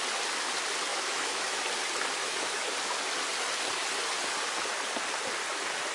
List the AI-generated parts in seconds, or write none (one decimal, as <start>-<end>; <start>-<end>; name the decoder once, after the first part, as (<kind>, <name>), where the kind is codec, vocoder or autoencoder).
0.9-1.6 (autoencoder, DAC-VAE); 2.2-2.7